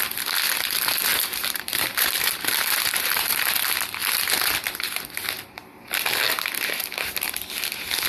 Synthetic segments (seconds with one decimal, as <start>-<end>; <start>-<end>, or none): 1.1-3.5